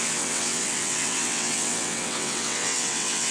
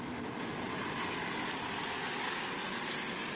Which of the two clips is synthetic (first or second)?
first